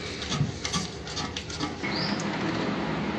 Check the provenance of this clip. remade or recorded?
recorded